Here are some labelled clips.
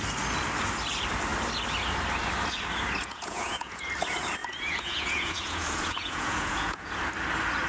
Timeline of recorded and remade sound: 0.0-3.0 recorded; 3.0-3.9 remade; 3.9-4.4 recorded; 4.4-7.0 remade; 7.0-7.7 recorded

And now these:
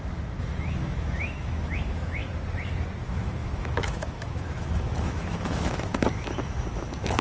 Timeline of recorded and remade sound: 0.0-2.2 remade; 2.2-3.0 recorded; 3.0-7.2 remade